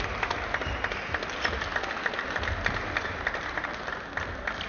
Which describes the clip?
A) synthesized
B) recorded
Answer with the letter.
B